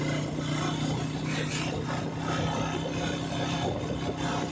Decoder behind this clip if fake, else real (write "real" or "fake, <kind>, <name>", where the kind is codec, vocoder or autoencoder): real